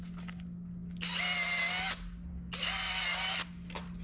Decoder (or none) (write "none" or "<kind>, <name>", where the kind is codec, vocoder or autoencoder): none